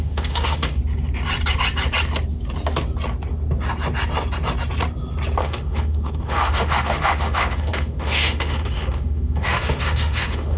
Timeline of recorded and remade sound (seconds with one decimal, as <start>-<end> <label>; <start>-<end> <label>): 0.0-0.8 remade; 0.8-5.4 recorded; 5.4-10.6 remade